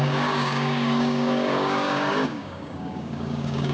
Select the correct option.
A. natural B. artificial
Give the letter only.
B